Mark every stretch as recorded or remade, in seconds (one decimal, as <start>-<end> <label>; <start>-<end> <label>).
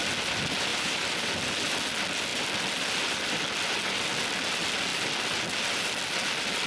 0.0-0.7 recorded; 0.7-1.3 remade; 1.3-6.7 recorded